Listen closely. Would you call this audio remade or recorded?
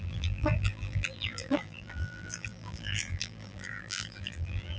remade